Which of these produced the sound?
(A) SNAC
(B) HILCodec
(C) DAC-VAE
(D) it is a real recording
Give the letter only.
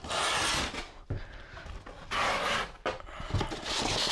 D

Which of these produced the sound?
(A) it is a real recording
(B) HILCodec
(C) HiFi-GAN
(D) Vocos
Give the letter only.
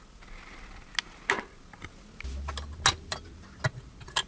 A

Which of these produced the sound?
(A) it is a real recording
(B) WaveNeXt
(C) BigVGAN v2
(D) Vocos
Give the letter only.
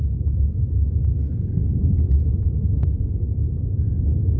A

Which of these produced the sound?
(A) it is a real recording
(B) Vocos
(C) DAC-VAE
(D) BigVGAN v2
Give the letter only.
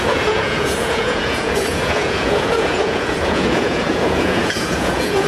B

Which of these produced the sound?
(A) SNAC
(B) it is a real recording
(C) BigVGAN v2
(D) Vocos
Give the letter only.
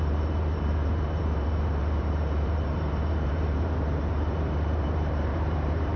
C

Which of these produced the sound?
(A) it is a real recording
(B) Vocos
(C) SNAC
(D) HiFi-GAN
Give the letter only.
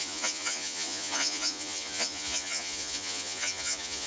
B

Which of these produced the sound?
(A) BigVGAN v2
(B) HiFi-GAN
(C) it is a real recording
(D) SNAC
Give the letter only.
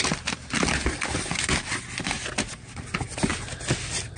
C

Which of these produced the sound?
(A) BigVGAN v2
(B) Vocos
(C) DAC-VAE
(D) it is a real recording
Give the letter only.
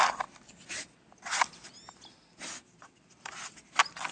D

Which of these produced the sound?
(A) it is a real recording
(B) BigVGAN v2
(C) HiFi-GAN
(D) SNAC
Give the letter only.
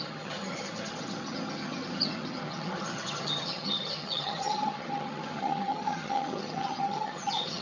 C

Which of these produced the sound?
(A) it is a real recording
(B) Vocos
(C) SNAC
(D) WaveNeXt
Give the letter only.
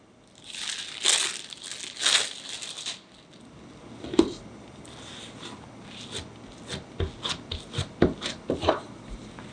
A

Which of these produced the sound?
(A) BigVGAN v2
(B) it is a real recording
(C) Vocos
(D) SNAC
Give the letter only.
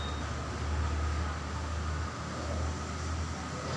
B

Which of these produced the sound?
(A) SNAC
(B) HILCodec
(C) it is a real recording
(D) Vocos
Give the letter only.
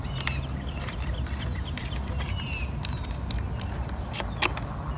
C